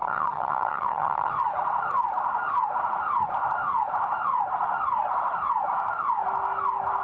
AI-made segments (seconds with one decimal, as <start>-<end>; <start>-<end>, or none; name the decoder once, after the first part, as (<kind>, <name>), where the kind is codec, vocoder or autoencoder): 0.0-1.3 (vocoder, HiFi-GAN)